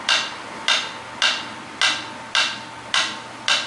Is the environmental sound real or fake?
real